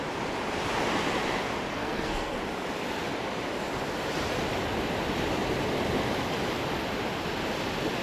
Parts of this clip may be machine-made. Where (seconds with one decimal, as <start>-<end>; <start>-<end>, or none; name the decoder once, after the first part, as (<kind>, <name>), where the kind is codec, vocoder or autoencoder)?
1.7-2.4 (codec, SNAC)